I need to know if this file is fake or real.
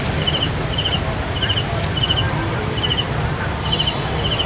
real